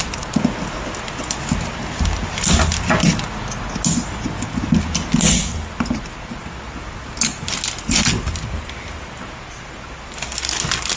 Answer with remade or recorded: recorded